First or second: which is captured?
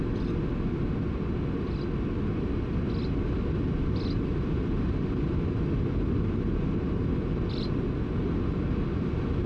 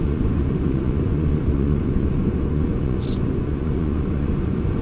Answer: first